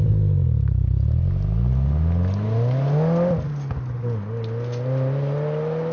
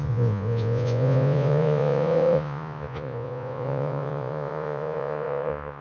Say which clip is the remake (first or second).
second